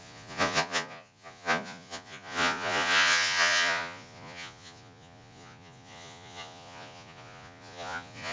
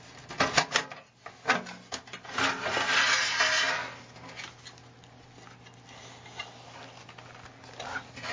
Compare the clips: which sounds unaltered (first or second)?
second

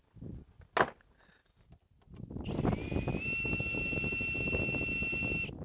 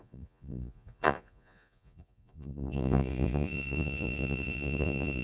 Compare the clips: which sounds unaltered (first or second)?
first